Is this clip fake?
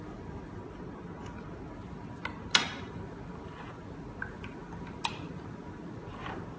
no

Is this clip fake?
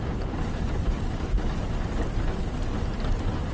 no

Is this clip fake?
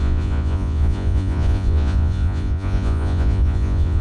yes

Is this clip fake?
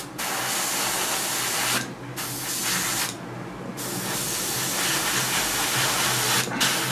no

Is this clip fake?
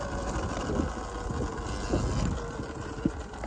no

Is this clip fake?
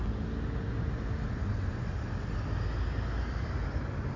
no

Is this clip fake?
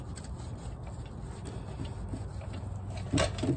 no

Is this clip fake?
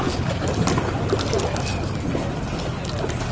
no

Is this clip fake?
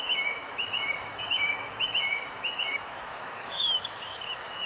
yes